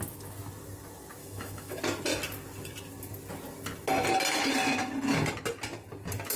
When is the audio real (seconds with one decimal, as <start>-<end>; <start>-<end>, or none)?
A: 0.0-1.2; 1.8-6.4